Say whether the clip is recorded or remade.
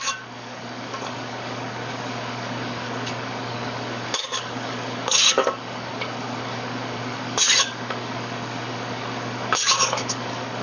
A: remade